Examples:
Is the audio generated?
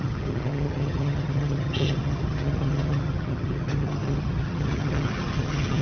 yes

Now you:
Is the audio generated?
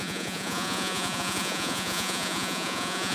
yes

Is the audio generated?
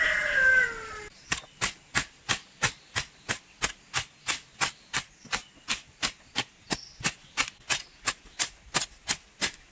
no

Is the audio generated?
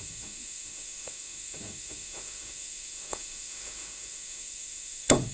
yes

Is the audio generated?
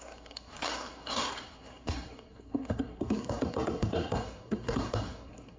yes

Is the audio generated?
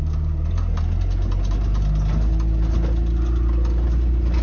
no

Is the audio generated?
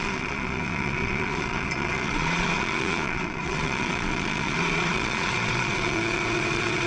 yes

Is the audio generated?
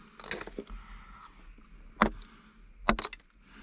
no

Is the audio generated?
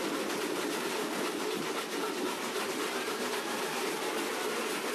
no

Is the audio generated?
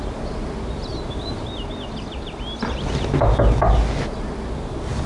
no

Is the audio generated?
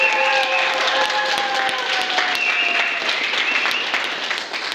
no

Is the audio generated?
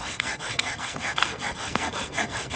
yes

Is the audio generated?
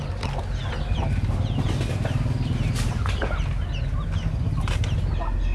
no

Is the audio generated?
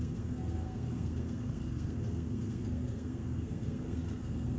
yes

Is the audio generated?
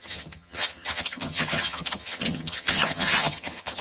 yes